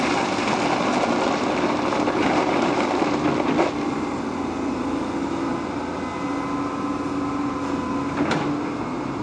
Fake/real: real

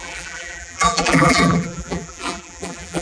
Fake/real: fake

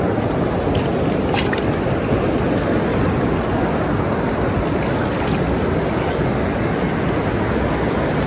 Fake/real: real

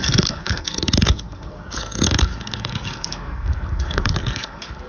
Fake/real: fake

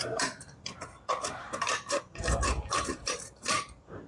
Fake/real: fake